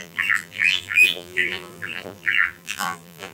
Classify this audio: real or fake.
fake